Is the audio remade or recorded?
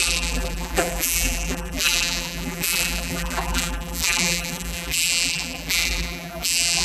remade